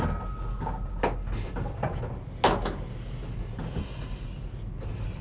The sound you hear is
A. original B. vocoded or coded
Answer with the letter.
A